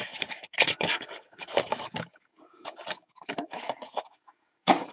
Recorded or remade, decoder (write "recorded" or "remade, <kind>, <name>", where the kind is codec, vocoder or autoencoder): remade, codec, DAC